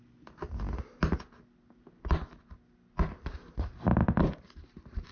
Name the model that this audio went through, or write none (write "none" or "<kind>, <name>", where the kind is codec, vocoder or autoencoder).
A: none